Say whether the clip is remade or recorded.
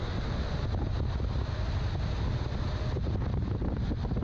recorded